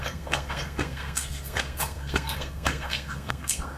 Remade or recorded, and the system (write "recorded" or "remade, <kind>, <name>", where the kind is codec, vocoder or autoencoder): remade, codec, SNAC